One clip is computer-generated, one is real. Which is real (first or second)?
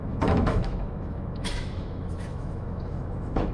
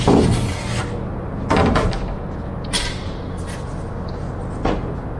second